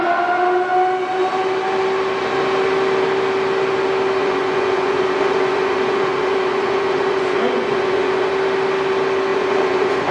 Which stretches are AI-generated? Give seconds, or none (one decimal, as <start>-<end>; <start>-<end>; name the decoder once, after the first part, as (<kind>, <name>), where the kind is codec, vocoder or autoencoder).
4.2-8.3 (vocoder, Vocos); 9.3-10.1